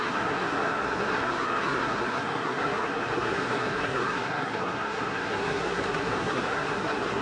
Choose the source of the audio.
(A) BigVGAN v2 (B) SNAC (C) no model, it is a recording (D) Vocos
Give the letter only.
B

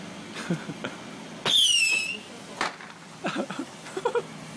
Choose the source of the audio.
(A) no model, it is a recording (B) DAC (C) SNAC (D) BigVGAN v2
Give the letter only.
A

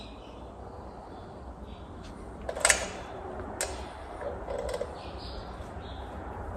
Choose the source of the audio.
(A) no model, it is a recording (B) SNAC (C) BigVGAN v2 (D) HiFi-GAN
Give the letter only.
A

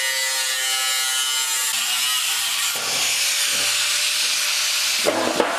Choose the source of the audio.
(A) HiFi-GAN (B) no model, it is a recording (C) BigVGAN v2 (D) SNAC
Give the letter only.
B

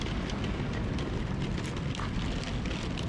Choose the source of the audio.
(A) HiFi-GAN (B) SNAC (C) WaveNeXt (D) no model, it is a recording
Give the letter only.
D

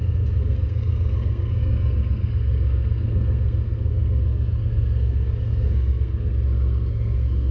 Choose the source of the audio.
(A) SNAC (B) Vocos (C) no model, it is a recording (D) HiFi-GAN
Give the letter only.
A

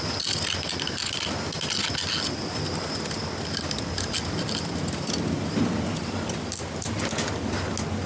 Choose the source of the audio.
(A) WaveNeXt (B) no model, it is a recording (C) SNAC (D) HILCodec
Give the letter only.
B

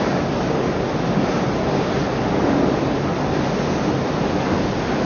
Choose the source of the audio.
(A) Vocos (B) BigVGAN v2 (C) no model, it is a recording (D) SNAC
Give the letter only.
C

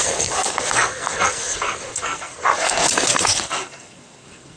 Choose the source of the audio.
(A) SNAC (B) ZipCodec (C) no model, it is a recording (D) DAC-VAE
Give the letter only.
A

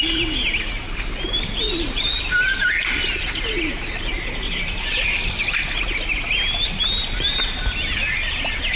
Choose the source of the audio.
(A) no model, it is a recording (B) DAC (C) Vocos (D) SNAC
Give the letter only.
A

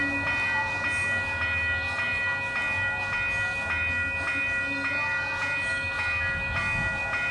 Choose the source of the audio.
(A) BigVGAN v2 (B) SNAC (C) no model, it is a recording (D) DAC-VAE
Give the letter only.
C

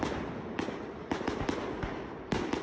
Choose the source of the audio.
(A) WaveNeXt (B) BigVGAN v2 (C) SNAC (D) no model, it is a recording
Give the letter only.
D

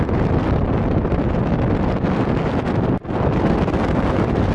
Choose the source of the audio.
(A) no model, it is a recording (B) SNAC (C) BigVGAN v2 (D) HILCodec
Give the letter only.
A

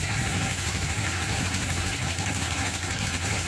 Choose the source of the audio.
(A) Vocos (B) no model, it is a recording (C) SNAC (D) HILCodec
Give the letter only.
C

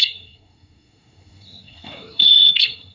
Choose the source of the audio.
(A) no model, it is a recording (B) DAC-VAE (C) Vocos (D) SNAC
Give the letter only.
D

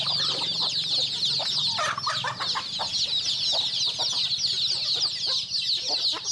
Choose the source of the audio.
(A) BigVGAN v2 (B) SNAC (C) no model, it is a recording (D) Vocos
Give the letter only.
C